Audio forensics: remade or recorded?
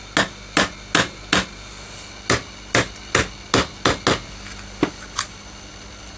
recorded